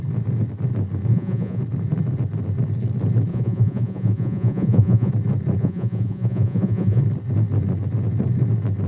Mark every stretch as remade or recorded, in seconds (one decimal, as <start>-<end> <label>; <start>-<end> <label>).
0.0-1.1 recorded; 1.1-1.6 remade; 1.6-3.3 recorded; 3.3-5.1 remade; 5.1-5.6 recorded; 5.6-7.0 remade; 7.0-8.9 recorded